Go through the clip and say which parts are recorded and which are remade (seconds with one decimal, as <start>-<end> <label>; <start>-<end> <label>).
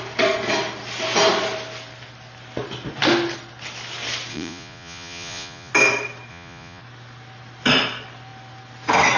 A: 0.0-4.3 recorded; 4.3-5.7 remade; 5.7-6.3 recorded; 6.3-6.8 remade; 6.8-9.2 recorded